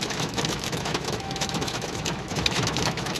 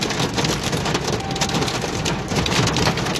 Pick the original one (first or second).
second